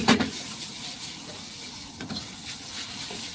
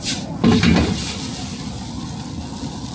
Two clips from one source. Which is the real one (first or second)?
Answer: second